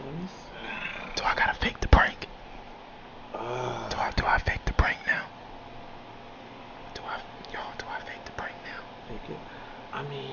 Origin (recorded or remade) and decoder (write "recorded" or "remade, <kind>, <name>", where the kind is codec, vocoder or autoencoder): recorded